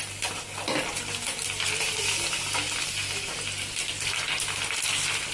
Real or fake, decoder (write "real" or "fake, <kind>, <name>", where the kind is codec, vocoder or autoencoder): real